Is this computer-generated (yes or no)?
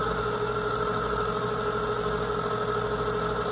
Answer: no